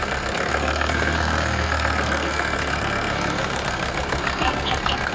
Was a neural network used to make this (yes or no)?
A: yes